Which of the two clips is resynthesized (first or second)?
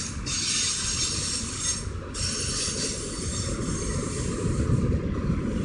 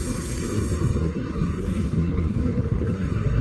second